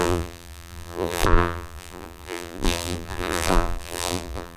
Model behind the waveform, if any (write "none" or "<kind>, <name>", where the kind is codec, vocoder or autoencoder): vocoder, BigVGAN v2